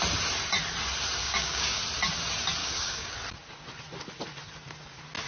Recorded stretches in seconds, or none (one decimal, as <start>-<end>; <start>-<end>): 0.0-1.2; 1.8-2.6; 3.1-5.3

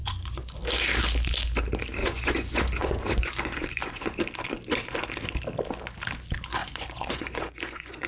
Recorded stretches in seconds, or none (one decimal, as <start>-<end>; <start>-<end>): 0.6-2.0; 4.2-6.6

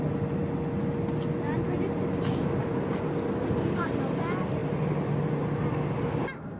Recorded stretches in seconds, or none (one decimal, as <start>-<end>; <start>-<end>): 0.0-6.6